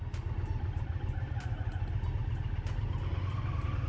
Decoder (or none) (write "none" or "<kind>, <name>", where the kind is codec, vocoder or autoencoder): none